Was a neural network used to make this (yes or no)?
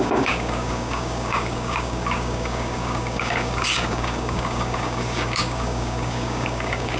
yes